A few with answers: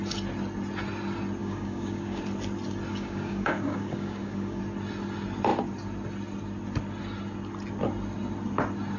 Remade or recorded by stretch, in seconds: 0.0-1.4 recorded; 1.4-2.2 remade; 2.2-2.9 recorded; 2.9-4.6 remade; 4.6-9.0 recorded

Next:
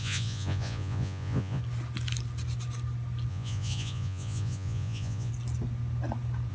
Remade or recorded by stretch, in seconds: 0.0-1.6 remade; 1.6-3.3 recorded; 3.3-5.3 remade; 5.3-6.5 recorded

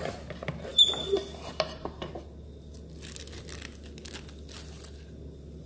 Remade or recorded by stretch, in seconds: 0.0-5.7 recorded